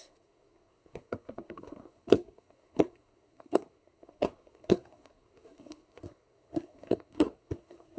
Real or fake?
fake